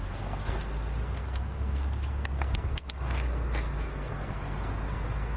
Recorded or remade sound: remade